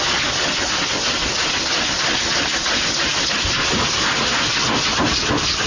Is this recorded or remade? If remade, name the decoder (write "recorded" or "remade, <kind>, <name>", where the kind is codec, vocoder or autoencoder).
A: recorded